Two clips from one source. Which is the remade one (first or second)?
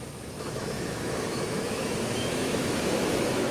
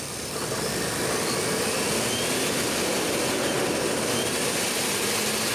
first